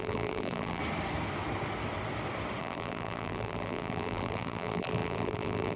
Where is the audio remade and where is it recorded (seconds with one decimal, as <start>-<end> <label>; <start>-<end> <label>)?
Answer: 0.0-0.8 remade; 0.8-2.6 recorded; 2.6-5.8 remade